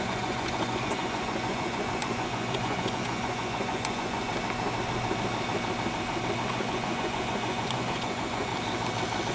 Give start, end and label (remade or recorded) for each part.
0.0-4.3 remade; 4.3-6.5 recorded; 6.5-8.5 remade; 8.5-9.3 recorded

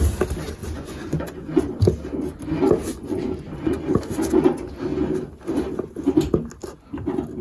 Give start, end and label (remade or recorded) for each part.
0.0-0.6 recorded; 0.6-1.6 remade; 1.6-2.9 recorded; 2.9-3.9 remade; 3.9-7.4 recorded

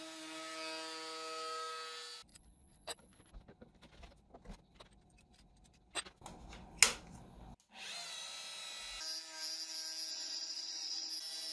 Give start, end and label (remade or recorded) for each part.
0.0-2.3 recorded; 2.3-3.3 remade; 3.3-10.1 recorded; 10.1-11.1 remade; 11.1-11.5 recorded

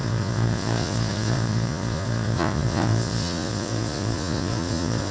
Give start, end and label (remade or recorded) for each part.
0.0-5.1 remade

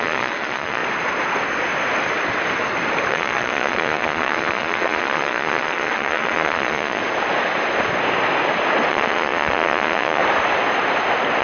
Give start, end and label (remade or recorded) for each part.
0.0-0.8 remade; 0.8-3.1 recorded; 3.1-7.0 remade; 7.0-8.9 recorded; 8.9-10.2 remade; 10.2-11.4 recorded

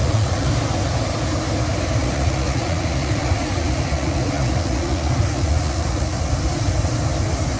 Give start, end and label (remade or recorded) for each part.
0.0-0.5 remade; 0.5-2.0 recorded; 2.0-6.3 remade; 6.3-7.6 recorded

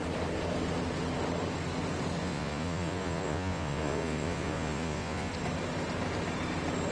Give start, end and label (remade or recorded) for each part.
0.0-2.2 recorded; 2.2-5.3 remade; 5.3-6.9 recorded